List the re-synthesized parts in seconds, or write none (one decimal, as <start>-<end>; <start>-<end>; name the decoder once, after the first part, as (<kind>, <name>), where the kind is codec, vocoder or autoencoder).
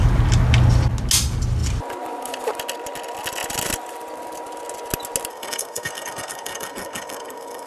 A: 5.3-7.7 (codec, SNAC)